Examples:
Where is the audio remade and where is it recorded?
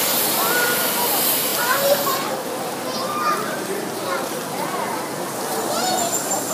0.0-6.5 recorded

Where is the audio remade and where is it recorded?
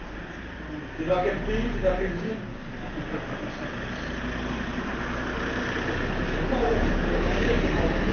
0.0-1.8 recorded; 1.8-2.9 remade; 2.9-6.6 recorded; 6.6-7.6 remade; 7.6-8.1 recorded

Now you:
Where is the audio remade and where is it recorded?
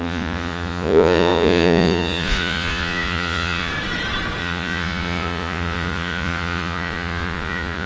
0.0-3.7 remade; 3.7-4.4 recorded; 4.4-7.9 remade